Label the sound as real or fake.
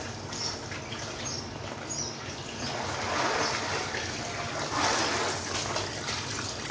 real